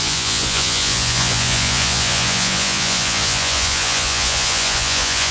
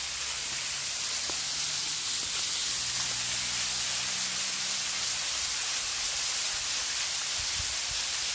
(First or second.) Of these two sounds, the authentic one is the second